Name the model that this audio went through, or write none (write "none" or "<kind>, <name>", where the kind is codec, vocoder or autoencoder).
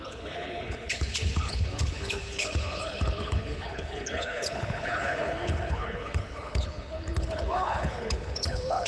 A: codec, HILCodec